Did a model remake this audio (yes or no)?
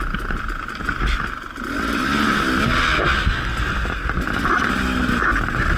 no